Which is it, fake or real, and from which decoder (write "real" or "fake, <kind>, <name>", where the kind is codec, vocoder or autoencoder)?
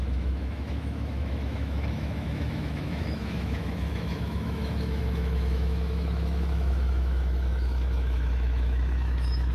fake, autoencoder, DAC-VAE